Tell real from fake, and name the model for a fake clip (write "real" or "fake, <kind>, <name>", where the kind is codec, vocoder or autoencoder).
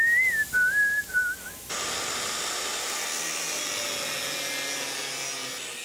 real